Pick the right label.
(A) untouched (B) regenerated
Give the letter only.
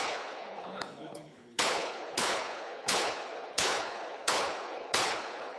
B